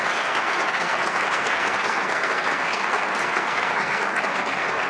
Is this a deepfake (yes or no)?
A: yes